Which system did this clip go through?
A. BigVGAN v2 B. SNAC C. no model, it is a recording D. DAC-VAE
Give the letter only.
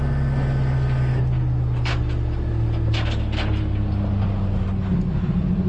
C